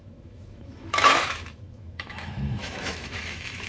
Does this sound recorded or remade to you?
remade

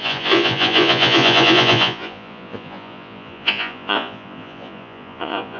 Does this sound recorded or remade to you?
remade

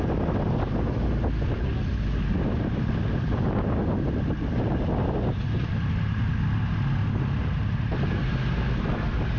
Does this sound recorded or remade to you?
recorded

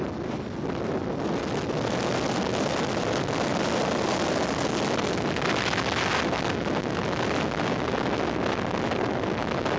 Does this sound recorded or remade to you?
recorded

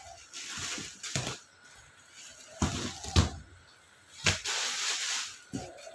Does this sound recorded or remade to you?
recorded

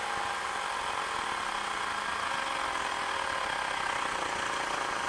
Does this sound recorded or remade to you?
recorded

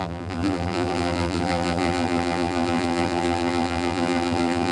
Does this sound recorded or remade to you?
remade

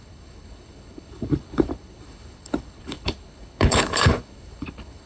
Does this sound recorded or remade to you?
remade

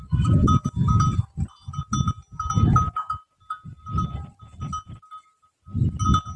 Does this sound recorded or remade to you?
recorded